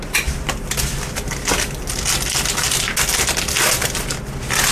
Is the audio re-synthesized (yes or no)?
no